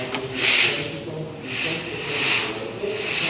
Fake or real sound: real